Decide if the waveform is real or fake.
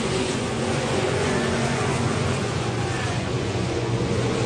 fake